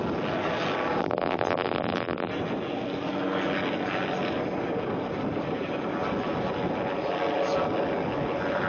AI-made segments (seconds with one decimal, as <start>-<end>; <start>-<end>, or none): 1.0-2.3